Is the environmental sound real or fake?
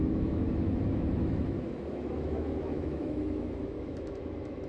fake